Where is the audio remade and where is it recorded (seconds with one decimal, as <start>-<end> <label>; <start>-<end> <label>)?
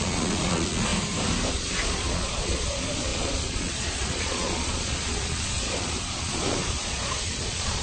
0.0-0.9 remade; 0.9-1.5 recorded; 1.5-7.8 remade